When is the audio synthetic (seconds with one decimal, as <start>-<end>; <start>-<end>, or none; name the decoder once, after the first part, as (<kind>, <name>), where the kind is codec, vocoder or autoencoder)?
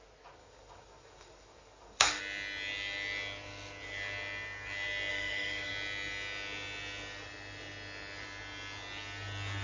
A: 0.4-2.2 (codec, DAC); 5.1-5.7